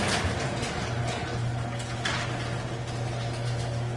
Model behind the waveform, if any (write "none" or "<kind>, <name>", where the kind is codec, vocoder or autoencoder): none